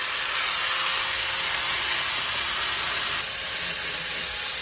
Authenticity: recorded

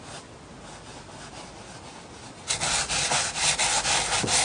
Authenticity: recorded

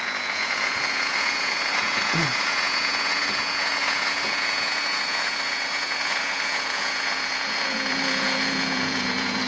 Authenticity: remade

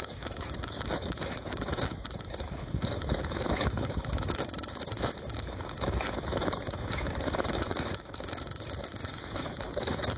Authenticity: remade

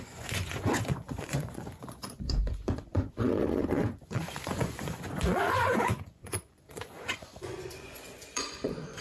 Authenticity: remade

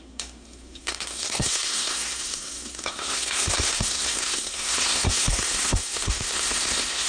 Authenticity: remade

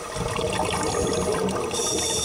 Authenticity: recorded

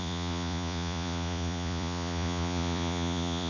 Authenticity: remade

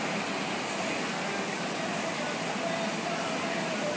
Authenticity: recorded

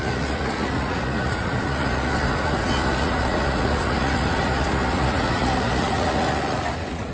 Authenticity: remade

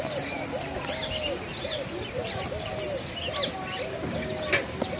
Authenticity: recorded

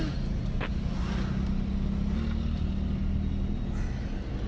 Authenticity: recorded